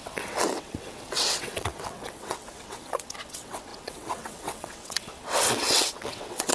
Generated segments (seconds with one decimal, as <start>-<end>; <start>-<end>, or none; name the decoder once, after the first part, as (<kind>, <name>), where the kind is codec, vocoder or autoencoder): 0.0-6.5 (vocoder, WaveNeXt)